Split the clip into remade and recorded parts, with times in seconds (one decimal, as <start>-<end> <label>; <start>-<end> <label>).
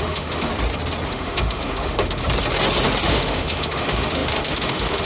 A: 0.0-0.5 remade; 0.5-1.1 recorded; 1.1-2.2 remade; 2.2-3.1 recorded; 3.1-5.1 remade